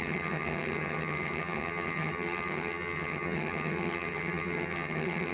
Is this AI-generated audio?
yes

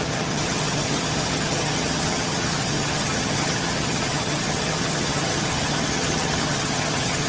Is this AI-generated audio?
yes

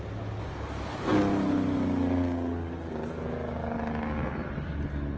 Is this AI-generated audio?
no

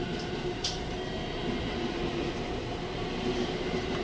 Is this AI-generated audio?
no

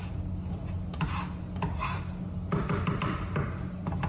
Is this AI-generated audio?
no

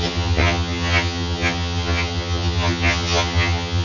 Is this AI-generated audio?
yes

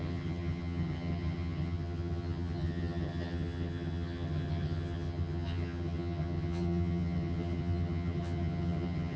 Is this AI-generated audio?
yes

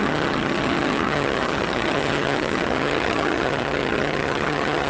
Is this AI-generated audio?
yes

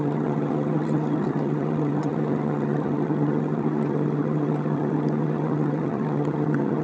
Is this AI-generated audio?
yes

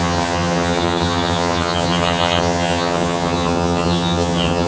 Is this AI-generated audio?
yes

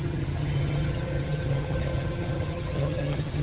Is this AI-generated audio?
yes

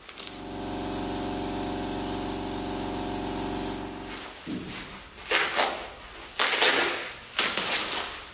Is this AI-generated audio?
no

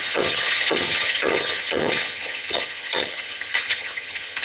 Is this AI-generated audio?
yes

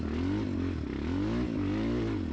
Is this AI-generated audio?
no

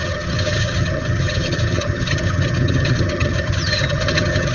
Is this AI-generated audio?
yes